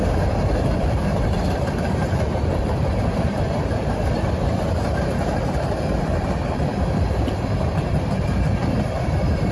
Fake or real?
fake